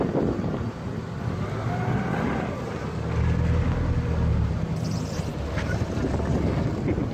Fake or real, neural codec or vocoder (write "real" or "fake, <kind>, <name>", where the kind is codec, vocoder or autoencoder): real